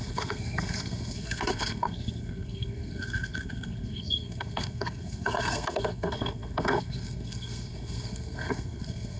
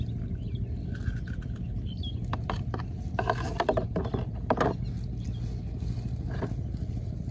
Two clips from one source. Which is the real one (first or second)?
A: second